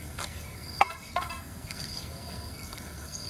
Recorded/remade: remade